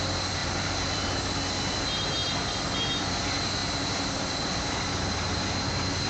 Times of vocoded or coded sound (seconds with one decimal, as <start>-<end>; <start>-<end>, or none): 0.4-1.2